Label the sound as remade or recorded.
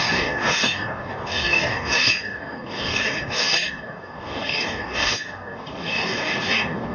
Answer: remade